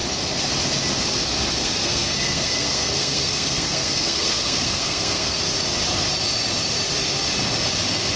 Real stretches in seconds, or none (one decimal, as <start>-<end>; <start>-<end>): 0.0-1.6; 5.4-8.2